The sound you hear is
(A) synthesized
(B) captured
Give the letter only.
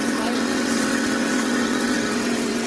A